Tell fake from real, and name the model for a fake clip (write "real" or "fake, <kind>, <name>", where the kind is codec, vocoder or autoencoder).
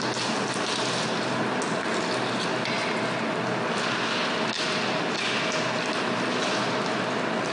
real